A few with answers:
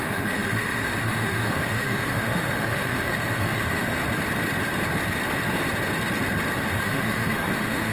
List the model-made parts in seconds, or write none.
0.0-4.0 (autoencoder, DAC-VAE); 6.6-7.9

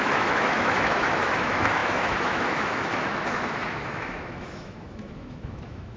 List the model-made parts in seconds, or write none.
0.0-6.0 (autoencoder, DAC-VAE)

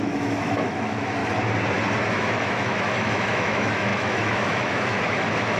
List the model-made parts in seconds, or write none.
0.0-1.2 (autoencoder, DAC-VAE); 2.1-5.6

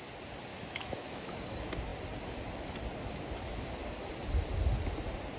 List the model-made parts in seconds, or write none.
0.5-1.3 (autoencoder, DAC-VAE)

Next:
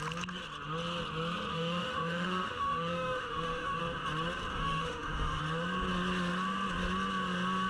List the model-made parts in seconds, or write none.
1.5-3.8 (autoencoder, DAC-VAE); 4.5-5.4

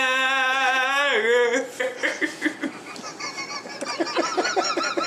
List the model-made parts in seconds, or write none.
none

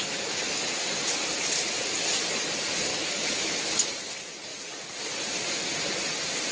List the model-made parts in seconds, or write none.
2.9-3.9 (autoencoder, DAC-VAE)

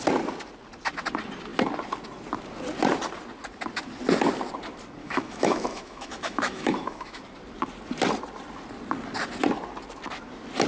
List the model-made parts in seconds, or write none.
5.0-7.2 (autoencoder, DAC-VAE)